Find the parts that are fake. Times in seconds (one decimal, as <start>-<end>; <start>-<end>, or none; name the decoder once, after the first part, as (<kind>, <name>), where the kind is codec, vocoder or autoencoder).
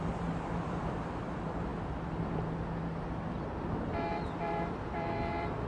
0.0-1.7 (vocoder, BigVGAN v2); 3.6-5.7